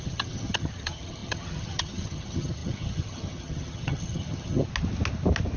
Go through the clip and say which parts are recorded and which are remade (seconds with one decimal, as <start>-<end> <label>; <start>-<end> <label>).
0.0-4.7 remade; 4.7-5.6 recorded

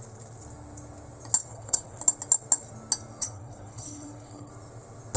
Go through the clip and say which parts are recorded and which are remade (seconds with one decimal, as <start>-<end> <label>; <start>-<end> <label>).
0.0-1.5 recorded; 1.5-2.0 remade; 2.0-3.2 recorded; 3.2-4.5 remade; 4.5-5.2 recorded

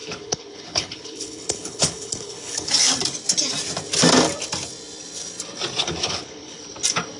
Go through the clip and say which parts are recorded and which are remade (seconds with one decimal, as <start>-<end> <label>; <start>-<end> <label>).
0.0-2.7 remade; 2.7-5.8 recorded; 5.8-6.6 remade; 6.6-7.2 recorded

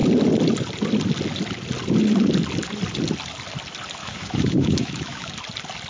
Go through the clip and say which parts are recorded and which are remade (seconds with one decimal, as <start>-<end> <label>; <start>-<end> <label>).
0.0-4.0 recorded; 4.0-5.3 remade; 5.3-5.9 recorded

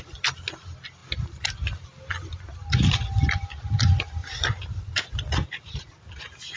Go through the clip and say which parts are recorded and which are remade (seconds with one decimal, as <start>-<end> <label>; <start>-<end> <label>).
0.0-4.2 recorded; 4.2-6.1 remade; 6.1-6.6 recorded

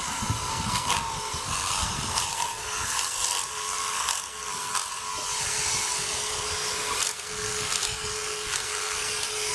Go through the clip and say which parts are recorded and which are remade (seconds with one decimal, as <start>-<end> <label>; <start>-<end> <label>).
0.0-4.7 remade; 4.7-5.4 recorded; 5.4-9.5 remade